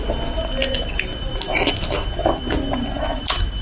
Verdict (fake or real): real